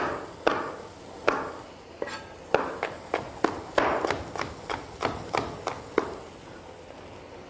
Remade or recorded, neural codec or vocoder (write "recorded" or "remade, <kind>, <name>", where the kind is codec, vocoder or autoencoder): recorded